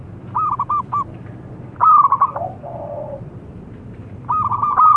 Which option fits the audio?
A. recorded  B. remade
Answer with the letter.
B